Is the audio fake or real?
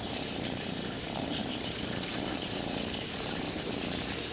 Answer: fake